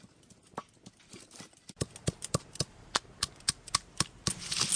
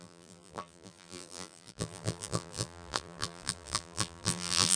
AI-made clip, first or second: second